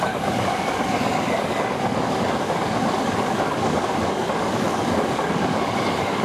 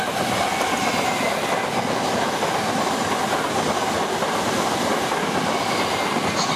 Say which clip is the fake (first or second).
first